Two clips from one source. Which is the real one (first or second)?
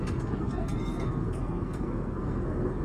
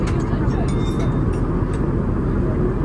second